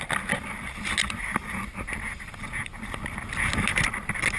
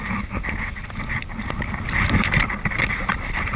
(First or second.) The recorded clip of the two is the first